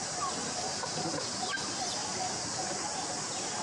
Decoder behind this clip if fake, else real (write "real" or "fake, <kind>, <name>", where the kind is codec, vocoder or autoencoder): real